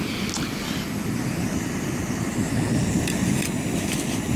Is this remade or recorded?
recorded